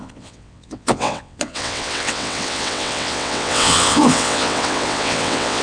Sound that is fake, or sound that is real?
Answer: fake